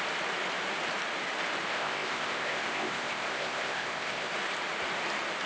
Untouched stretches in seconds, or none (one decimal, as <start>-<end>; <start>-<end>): 0.0-1.7; 4.3-5.5